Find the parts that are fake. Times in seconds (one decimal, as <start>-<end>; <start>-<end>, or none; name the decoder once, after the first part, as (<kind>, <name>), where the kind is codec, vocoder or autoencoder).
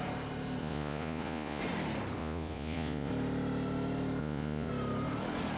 0.6-1.6 (vocoder, Vocos); 2.2-3.1; 4.2-4.7